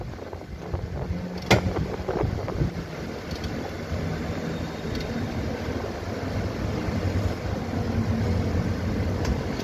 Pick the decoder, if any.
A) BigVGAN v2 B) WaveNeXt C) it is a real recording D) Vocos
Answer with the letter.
C